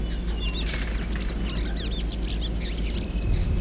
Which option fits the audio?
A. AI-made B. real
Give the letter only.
B